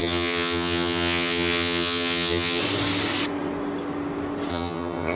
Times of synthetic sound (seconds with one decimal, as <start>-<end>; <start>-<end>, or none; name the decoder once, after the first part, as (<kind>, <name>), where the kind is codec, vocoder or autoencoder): 0.0-2.6 (vocoder, HiFi-GAN); 4.5-5.2